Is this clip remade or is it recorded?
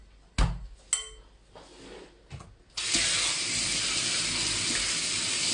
recorded